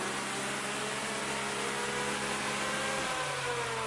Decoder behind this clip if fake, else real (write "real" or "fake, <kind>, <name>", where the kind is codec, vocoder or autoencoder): real